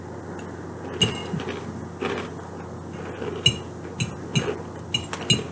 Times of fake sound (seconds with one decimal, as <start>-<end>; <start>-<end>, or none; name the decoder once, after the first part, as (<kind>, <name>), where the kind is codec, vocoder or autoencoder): none

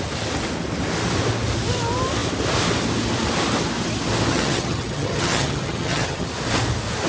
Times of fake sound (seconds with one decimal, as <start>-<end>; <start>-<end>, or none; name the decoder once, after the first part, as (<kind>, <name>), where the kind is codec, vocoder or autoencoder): 4.3-6.3 (vocoder, HiFi-GAN)